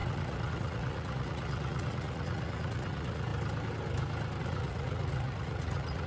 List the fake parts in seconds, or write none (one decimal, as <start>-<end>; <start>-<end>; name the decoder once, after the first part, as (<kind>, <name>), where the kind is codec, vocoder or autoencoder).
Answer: 0.0-3.3 (vocoder, Vocos); 4.4-6.1